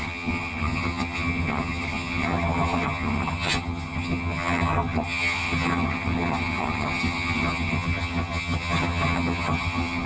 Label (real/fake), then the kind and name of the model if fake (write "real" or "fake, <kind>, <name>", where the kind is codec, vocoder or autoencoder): fake, vocoder, HiFi-GAN